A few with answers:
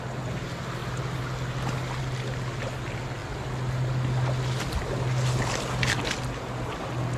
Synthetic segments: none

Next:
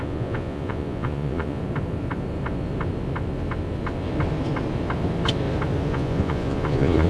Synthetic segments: 0.0-1.6 (vocoder, Vocos); 5.9-7.1

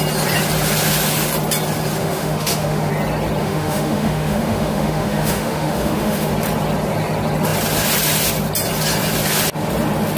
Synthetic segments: 2.0-2.9 (autoencoder, DAC-VAE); 3.4-6.3

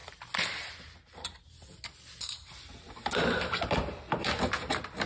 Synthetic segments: none